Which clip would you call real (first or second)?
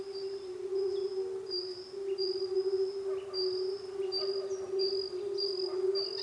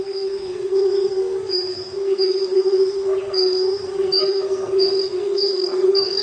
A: first